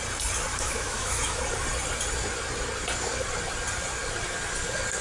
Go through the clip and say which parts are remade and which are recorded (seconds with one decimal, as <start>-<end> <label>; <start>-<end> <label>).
0.0-0.5 recorded; 0.5-1.4 remade; 1.4-5.0 recorded

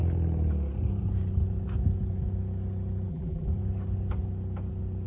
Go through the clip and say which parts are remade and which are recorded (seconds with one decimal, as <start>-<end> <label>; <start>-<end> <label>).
0.0-3.1 recorded; 3.1-3.5 remade; 3.5-5.1 recorded

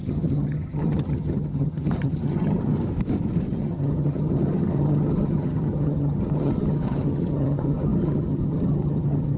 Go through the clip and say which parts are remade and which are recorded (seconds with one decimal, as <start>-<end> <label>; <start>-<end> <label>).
0.0-2.7 remade; 2.7-3.5 recorded; 3.5-9.4 remade

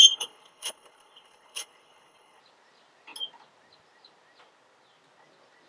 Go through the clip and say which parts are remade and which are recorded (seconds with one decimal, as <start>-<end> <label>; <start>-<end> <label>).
0.0-2.4 remade; 2.4-5.7 recorded

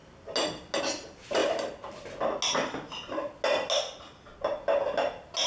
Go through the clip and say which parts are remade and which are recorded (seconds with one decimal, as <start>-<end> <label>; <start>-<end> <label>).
0.0-5.5 recorded

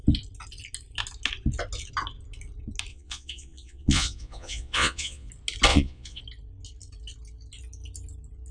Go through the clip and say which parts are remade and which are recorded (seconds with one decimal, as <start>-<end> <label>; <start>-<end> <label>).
0.0-2.9 recorded; 2.9-5.3 remade; 5.3-5.7 recorded; 5.7-6.2 remade; 6.2-8.5 recorded